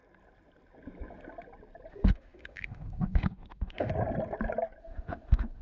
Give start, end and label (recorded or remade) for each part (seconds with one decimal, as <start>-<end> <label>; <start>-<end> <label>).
0.0-1.9 recorded; 1.9-3.9 remade; 3.9-4.8 recorded; 4.8-5.6 remade